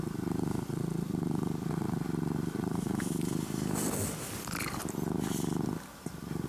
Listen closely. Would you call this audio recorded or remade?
recorded